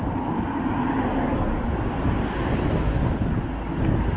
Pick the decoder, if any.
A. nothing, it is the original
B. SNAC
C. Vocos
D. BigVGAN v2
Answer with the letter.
A